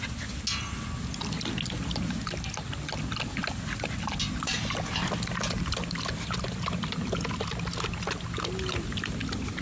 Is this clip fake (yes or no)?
no